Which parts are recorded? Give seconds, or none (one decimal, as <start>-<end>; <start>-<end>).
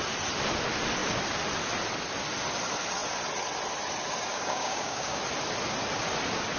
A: 0.0-4.3; 5.2-6.6